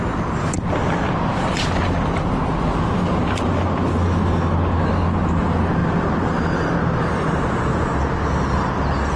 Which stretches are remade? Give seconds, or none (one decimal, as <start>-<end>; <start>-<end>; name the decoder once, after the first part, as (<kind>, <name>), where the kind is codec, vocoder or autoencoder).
5.8-6.3 (vocoder, BigVGAN v2)